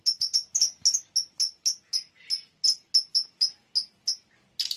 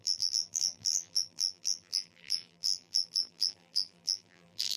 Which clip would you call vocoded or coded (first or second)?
second